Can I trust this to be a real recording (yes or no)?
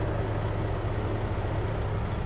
yes